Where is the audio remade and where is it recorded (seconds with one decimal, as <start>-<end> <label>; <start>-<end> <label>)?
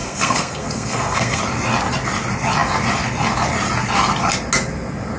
0.0-1.4 remade; 1.4-5.2 recorded